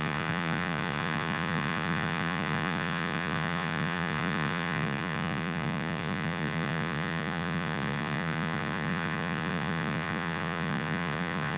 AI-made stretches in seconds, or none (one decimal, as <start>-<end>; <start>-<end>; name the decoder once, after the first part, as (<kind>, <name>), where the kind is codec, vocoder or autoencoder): 0.0-11.6 (vocoder, Vocos)

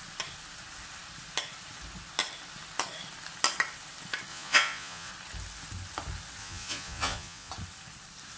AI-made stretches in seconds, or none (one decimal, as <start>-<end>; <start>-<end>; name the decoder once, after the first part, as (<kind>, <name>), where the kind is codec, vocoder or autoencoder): 4.3-5.1 (vocoder, Vocos); 6.4-7.5

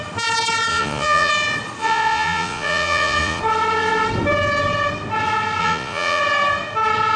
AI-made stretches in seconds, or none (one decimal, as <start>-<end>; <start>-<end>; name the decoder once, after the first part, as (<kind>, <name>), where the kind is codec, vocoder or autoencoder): 0.7-1.3 (vocoder, Vocos); 1.8-3.4; 5.6-6.2

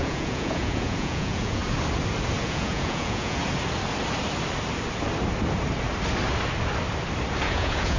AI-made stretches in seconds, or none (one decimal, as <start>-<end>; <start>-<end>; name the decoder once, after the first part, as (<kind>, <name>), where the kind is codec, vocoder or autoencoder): 0.0-1.6 (vocoder, Vocos); 2.4-3.4; 7.5-8.0

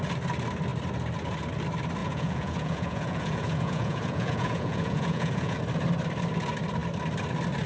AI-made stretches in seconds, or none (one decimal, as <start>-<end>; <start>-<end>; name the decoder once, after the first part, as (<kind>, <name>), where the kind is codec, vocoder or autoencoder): 2.0-5.6 (vocoder, Vocos)

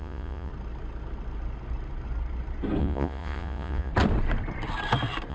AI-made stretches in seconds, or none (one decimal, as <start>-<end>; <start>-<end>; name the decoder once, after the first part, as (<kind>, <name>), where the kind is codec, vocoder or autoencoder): 0.0-0.5 (vocoder, Vocos); 2.8-3.9

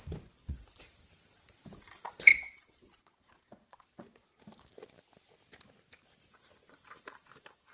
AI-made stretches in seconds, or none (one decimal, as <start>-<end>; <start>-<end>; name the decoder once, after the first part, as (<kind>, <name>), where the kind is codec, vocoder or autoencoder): 0.4-1.0 (vocoder, Vocos); 2.3-4.4